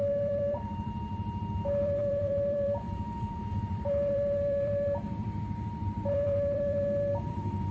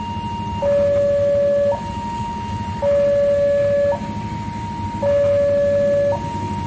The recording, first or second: second